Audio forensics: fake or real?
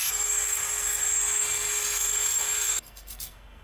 fake